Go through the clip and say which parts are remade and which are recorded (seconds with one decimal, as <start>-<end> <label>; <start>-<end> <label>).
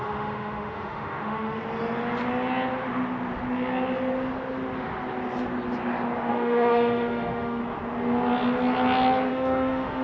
0.0-1.6 remade; 1.6-6.3 recorded; 6.3-7.6 remade; 7.6-9.3 recorded; 9.3-10.0 remade